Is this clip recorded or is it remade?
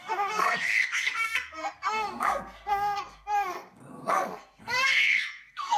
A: remade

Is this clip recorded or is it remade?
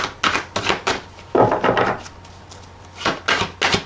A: recorded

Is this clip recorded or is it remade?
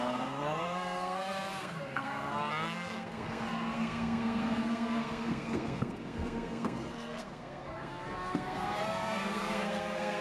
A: remade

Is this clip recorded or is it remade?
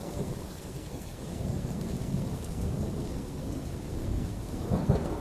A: remade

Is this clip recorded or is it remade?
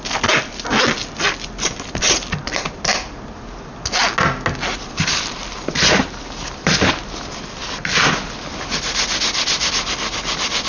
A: recorded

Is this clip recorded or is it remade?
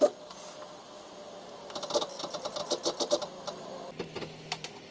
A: recorded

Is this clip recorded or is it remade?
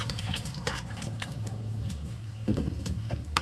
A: remade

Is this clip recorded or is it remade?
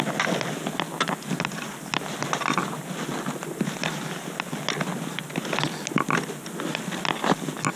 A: recorded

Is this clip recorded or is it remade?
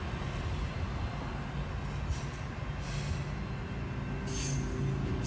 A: recorded